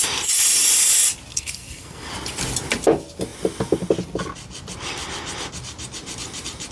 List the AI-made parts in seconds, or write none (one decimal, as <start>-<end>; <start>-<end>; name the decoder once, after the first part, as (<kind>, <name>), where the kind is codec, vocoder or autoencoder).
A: 1.3-2.1 (codec, SNAC)